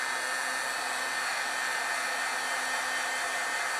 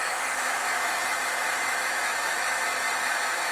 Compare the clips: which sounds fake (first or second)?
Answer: second